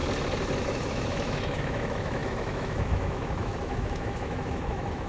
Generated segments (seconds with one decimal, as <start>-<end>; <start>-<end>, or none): 0.6-5.1